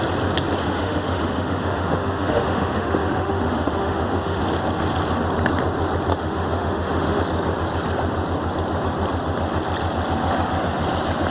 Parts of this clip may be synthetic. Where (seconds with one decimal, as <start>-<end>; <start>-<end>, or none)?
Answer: 0.6-4.4; 6.1-7.2